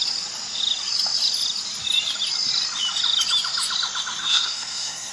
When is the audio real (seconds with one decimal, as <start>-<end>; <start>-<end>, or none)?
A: 0.0-4.2